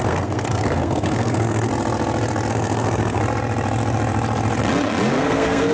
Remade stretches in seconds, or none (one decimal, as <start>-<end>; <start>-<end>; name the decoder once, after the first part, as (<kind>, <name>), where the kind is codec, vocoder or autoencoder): 0.0-1.7 (codec, SNAC); 2.5-3.2; 5.1-5.7